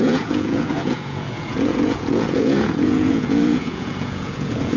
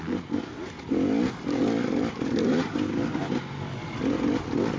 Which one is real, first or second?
second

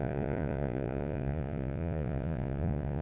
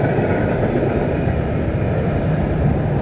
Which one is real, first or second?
second